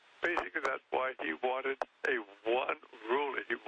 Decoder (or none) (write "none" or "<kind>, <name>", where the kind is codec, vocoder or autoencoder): none